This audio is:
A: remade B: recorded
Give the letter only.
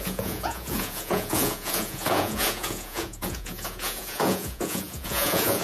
A